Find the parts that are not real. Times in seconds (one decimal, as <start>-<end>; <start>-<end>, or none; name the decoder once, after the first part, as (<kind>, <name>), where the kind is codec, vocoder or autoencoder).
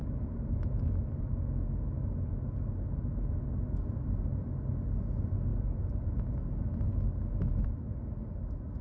none